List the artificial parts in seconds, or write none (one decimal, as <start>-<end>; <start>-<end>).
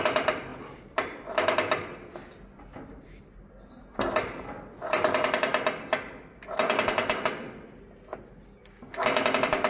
none